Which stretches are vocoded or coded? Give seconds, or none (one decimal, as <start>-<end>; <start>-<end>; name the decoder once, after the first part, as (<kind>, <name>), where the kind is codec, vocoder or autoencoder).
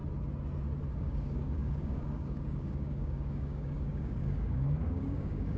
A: 0.9-5.6 (codec, DAC)